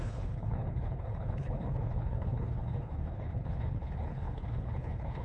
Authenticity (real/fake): fake